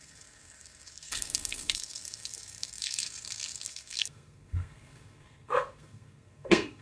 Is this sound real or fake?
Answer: fake